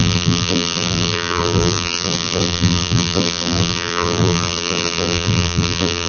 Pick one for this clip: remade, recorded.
remade